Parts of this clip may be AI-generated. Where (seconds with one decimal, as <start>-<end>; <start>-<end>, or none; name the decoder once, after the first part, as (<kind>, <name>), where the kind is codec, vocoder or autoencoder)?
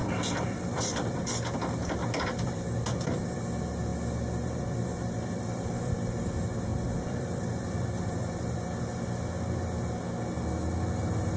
0.0-1.2 (vocoder, BigVGAN v2); 1.8-2.8; 3.9-5.9; 6.7-8.8